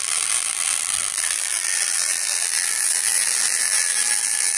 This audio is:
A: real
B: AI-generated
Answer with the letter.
B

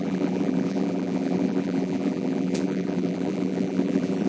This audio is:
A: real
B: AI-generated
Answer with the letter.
B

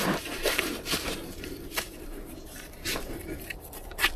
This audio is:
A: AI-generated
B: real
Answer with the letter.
A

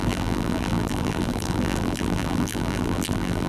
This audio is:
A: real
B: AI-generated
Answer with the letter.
B